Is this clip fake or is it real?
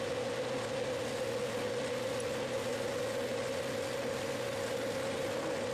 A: real